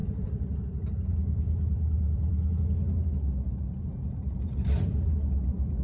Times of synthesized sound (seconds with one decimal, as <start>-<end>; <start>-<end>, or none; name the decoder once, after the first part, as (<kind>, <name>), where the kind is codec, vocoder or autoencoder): 0.0-2.6 (vocoder, BigVGAN v2); 3.9-4.8